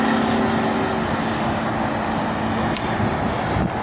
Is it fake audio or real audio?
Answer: real